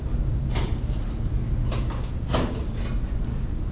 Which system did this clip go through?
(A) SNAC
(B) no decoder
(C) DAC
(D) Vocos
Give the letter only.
B